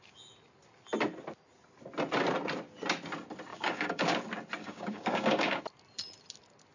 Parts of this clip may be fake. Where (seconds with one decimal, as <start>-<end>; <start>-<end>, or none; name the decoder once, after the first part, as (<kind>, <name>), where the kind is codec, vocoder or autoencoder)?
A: 3.5-4.1 (codec, DAC); 4.6-5.6